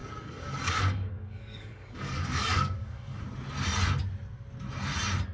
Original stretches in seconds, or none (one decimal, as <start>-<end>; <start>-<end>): 3.2-5.3